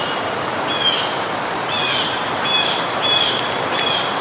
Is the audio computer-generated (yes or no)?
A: no